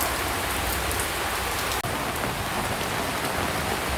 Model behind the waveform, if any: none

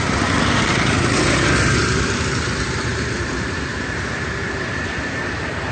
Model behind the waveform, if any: vocoder, BigVGAN v2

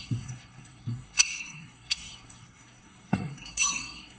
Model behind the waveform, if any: codec, SNAC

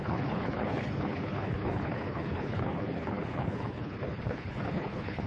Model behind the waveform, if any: codec, HILCodec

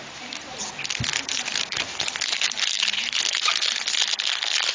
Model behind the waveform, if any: none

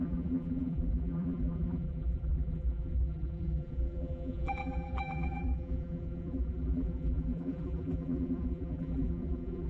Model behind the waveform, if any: vocoder, BigVGAN v2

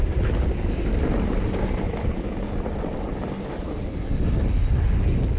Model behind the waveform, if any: none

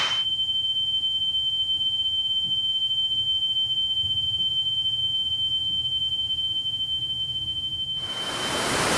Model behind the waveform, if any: vocoder, BigVGAN v2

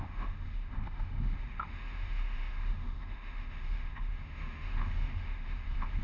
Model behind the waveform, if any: autoencoder, DAC-VAE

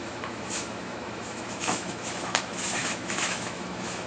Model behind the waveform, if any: autoencoder, DAC-VAE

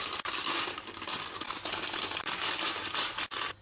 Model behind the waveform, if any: none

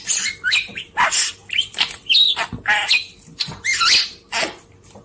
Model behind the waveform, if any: none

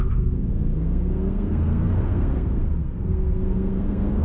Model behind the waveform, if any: codec, SNAC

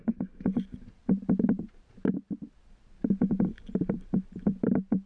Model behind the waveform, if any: none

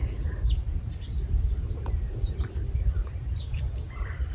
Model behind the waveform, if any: none